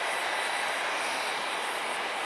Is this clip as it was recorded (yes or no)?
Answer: yes